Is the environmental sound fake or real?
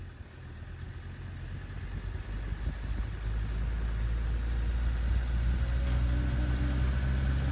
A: real